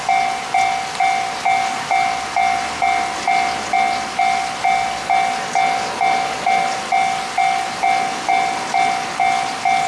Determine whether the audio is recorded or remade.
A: recorded